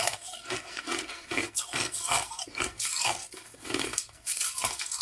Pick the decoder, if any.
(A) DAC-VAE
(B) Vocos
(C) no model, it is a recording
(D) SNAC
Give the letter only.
D